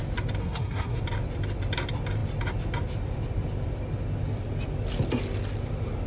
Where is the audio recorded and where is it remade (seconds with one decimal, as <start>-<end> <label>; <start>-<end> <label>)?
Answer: 0.0-0.4 recorded; 0.4-1.0 remade; 1.0-6.1 recorded